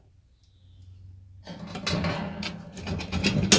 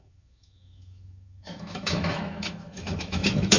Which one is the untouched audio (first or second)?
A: first